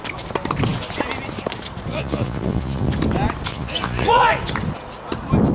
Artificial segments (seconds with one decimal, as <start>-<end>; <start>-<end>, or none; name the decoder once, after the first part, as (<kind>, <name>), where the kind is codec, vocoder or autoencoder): 1.9-2.9 (vocoder, Vocos); 3.5-4.4